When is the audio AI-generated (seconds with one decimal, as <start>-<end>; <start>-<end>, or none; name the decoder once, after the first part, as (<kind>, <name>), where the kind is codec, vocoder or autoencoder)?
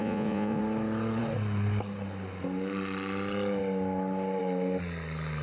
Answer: 0.0-0.6 (vocoder, Vocos)